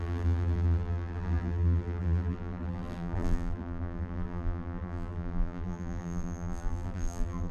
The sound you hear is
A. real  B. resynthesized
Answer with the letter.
B